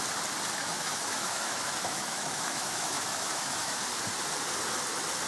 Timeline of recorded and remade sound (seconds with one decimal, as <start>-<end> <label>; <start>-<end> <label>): 0.0-0.6 recorded; 0.6-3.8 remade; 3.8-5.3 recorded